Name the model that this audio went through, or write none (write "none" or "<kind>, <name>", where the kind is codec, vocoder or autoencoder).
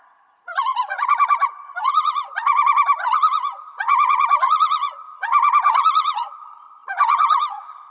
vocoder, Vocos